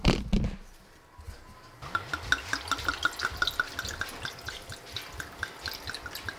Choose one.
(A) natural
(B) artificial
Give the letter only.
A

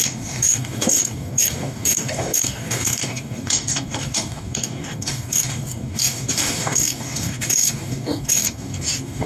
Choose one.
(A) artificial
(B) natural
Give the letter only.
A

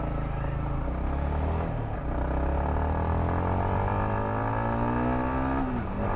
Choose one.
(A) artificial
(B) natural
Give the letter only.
B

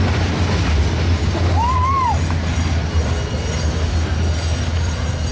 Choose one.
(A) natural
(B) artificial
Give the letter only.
A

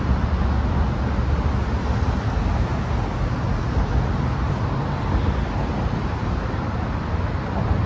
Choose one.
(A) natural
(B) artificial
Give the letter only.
A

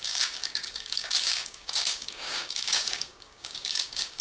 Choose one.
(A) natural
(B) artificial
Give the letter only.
B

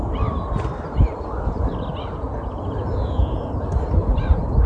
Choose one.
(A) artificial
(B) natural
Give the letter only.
B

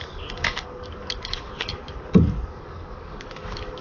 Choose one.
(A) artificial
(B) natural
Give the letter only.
A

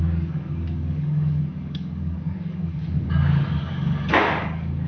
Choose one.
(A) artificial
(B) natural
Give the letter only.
A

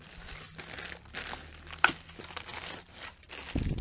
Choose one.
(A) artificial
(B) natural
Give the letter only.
B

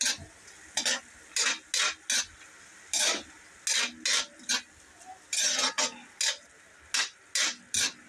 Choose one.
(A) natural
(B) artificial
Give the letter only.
A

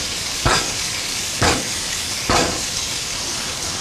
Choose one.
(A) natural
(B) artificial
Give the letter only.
B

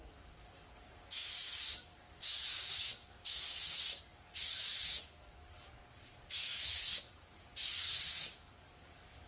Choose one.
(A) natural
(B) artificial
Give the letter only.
B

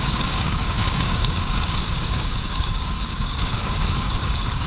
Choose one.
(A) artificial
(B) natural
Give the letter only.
A